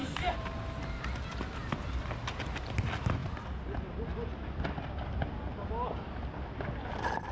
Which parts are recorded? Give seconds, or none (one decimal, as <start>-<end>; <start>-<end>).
0.5-7.3